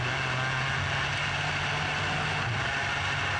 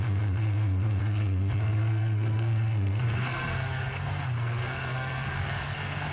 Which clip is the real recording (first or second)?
first